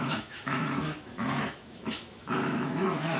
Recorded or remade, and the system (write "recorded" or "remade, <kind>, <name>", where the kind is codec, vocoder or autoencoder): remade, autoencoder, DAC-VAE